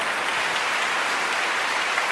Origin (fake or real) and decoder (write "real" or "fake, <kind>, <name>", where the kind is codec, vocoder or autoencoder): real